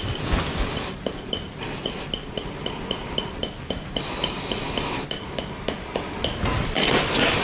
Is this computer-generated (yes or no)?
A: no